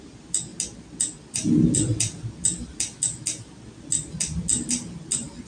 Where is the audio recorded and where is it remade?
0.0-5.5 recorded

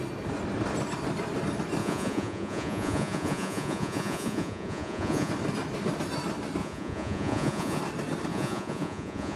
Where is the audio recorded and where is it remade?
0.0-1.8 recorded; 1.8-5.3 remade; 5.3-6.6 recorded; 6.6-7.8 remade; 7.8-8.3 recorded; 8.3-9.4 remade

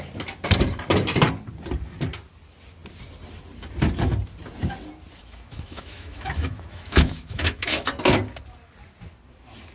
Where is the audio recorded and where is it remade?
0.0-5.2 recorded; 5.2-7.9 remade; 7.9-9.7 recorded

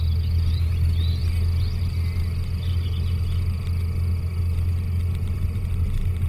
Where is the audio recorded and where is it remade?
0.0-6.3 recorded